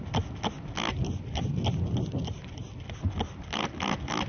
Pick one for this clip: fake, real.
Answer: real